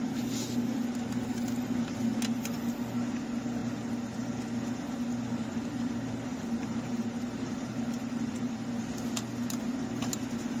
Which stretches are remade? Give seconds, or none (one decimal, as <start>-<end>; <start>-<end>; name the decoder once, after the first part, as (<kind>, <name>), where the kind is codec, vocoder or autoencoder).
6.3-8.3 (vocoder, BigVGAN v2)